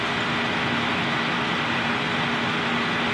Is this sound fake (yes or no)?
no